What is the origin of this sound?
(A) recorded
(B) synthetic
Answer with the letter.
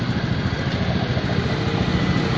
A